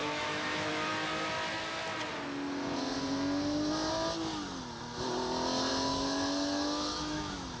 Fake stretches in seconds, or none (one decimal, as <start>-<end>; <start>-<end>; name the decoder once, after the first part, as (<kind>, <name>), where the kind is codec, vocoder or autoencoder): 0.0-0.7 (autoencoder, DAC-VAE); 5.7-7.6